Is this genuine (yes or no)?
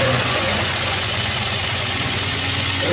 no